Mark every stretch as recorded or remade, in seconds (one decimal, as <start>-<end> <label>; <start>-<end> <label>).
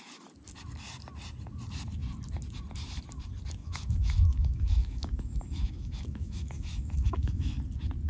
0.0-3.6 recorded; 3.6-7.6 remade; 7.6-8.1 recorded